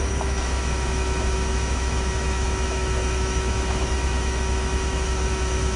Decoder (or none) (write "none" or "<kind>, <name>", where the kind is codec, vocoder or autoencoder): autoencoder, DAC-VAE